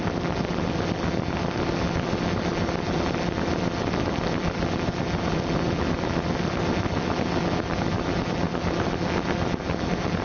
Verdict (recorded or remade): recorded